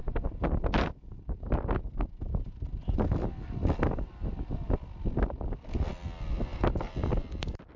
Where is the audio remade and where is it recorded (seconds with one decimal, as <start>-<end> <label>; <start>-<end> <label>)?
0.0-7.8 recorded

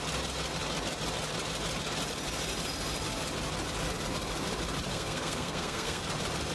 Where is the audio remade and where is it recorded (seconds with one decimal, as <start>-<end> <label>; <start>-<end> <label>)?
0.0-4.9 recorded; 4.9-6.0 remade; 6.0-6.5 recorded

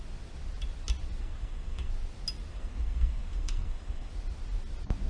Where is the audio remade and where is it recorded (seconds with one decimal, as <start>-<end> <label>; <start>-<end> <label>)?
0.0-1.2 recorded; 1.2-1.9 remade; 1.9-2.5 recorded; 2.5-4.1 remade; 4.1-5.1 recorded

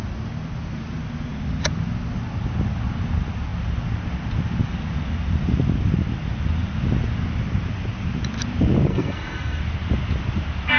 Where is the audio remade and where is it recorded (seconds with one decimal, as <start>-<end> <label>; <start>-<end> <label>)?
0.0-8.9 recorded; 8.9-9.6 remade; 9.6-10.8 recorded

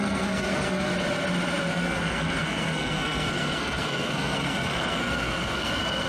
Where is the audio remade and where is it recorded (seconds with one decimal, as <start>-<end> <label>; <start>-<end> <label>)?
0.0-0.9 remade; 0.9-1.7 recorded; 1.7-6.1 remade